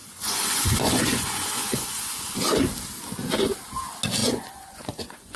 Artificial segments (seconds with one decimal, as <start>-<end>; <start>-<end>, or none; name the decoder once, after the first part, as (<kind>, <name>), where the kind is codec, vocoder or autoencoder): 0.0-2.4 (vocoder, Vocos); 4.2-5.4